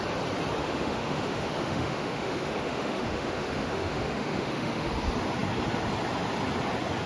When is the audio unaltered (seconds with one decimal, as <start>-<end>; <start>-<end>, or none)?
0.0-0.6; 4.9-7.1

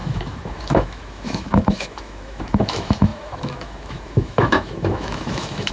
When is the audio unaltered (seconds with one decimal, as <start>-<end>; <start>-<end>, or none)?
none

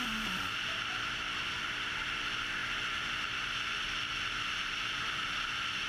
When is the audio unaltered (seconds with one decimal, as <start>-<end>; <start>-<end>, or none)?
0.0-5.9